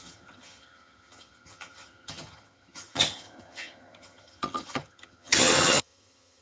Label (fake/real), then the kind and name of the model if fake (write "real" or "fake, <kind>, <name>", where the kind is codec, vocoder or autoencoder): fake, vocoder, HiFi-GAN